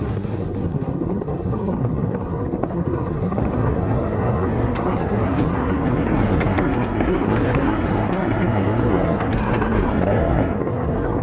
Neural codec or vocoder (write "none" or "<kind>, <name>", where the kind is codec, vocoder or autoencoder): codec, SNAC